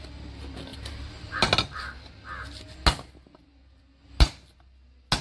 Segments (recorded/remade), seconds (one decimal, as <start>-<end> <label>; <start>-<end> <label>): 0.0-5.2 recorded